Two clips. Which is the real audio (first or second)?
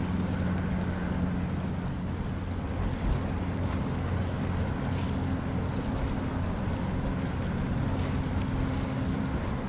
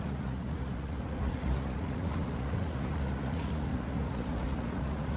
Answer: first